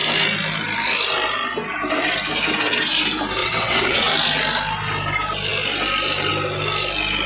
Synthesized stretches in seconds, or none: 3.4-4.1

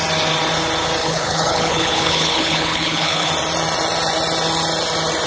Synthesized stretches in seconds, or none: 1.0-3.3

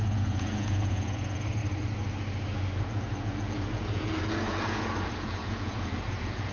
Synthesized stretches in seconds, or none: 0.0-1.6; 2.8-6.5

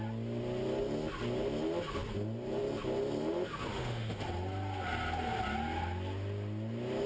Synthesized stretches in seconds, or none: 3.7-4.2